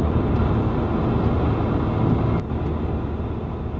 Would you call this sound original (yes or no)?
yes